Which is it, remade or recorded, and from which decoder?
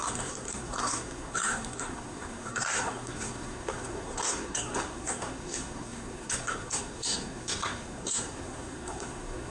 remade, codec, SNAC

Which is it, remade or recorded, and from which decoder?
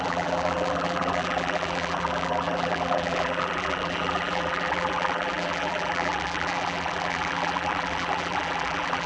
remade, vocoder, BigVGAN v2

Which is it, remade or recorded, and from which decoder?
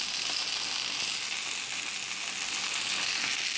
recorded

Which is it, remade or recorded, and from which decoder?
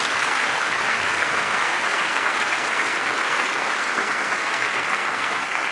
remade, codec, SNAC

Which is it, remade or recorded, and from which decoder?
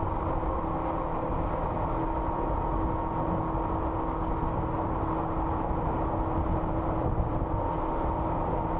recorded